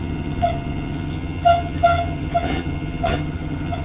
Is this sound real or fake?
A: fake